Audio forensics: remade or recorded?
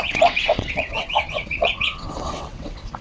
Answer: remade